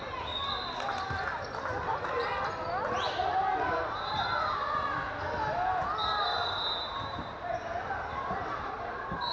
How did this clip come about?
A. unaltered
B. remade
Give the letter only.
A